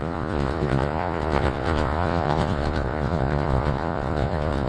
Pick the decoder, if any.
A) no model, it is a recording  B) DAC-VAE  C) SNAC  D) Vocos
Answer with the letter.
D